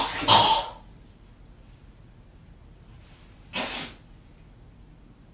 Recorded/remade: recorded